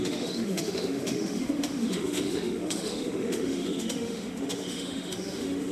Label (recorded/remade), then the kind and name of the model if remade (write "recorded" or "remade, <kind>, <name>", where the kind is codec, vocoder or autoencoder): remade, autoencoder, DAC-VAE